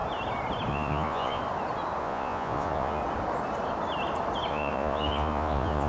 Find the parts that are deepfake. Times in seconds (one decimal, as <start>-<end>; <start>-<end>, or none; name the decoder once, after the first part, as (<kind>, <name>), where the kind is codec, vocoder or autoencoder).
0.7-1.4 (vocoder, Vocos); 2.0-3.0; 4.5-5.9